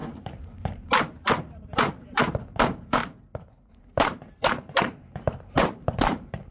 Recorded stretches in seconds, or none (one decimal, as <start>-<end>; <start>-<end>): 3.0-3.7